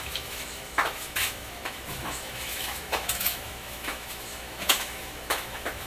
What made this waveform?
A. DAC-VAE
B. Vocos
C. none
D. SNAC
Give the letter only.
A